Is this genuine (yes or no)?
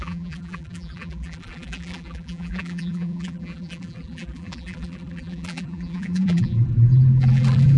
no